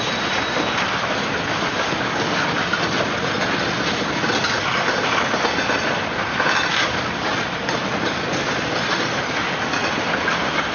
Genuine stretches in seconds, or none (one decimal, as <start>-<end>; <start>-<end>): 0.0-1.7; 2.5-6.7; 7.3-10.7